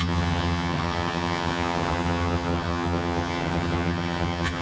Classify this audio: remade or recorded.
remade